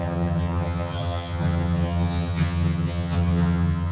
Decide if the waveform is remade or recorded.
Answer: remade